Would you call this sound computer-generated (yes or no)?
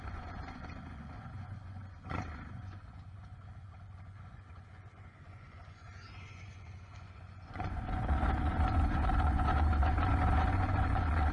yes